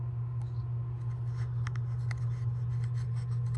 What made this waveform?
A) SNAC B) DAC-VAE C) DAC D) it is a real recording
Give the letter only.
D